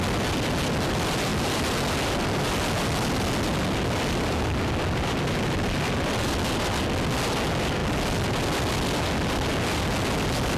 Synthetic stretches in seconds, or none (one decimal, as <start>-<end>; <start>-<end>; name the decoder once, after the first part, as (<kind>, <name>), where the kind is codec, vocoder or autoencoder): none